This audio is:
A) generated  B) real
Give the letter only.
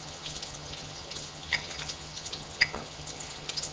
A